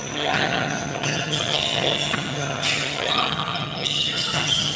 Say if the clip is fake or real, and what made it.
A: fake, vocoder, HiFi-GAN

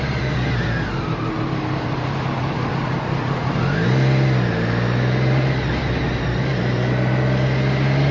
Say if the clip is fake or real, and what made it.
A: real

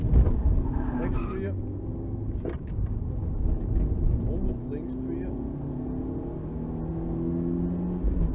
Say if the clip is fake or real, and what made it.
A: real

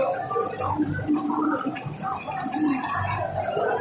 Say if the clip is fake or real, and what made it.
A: real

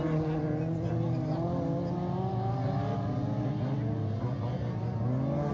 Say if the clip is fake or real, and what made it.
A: real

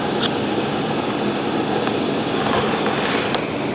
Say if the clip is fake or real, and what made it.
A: real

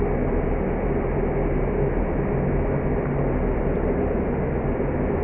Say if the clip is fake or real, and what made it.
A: real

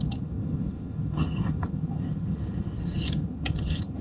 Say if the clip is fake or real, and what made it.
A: fake, vocoder, HiFi-GAN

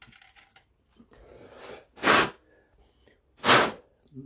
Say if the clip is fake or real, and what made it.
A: real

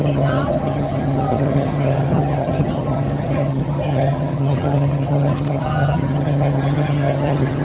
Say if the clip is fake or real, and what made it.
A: fake, vocoder, HiFi-GAN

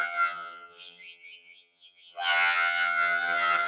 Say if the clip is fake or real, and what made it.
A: fake, vocoder, HiFi-GAN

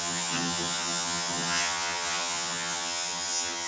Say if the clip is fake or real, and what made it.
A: fake, vocoder, HiFi-GAN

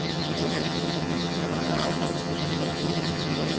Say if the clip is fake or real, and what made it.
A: fake, vocoder, HiFi-GAN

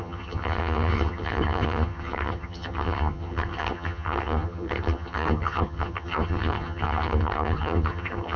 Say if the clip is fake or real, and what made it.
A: fake, vocoder, HiFi-GAN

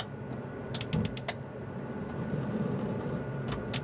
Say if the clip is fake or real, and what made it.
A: real